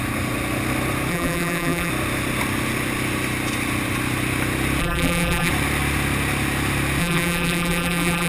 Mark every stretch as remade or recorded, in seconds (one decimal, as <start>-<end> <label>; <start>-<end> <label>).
0.0-1.1 recorded; 1.1-1.9 remade; 1.9-4.8 recorded; 4.8-5.5 remade; 5.5-7.0 recorded; 7.0-8.3 remade